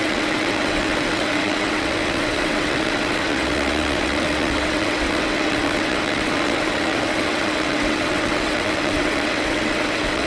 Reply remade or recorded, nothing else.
remade